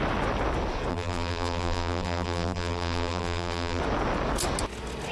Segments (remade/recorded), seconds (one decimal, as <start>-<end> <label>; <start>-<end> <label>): 0.0-0.9 recorded; 0.9-3.8 remade; 3.8-5.1 recorded